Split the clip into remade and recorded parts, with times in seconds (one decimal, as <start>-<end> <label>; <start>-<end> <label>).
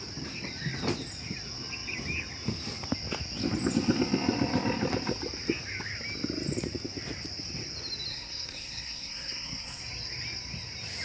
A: 0.0-8.1 recorded; 8.1-9.8 remade; 9.8-11.0 recorded